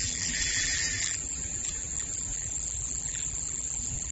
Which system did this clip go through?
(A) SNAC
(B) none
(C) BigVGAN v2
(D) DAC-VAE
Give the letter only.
C